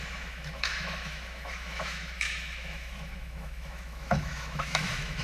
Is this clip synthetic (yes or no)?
yes